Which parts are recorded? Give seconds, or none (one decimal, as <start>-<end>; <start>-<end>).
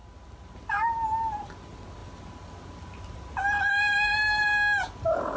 0.0-5.4